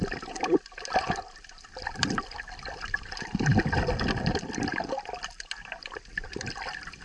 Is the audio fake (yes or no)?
no